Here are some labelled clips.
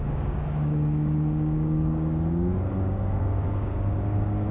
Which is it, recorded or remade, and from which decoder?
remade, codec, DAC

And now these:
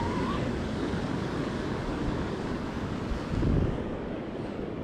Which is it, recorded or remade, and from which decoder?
remade, codec, DAC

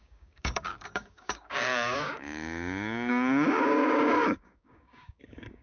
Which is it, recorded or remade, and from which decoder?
remade, codec, DAC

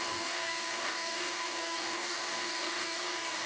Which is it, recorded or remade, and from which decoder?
remade, codec, DAC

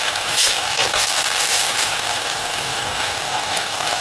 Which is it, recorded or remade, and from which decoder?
remade, codec, DAC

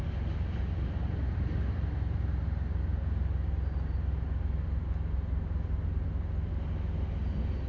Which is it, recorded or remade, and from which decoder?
recorded